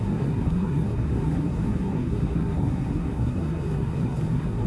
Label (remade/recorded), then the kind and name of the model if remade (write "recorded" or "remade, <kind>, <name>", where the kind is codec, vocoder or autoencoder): remade, codec, SNAC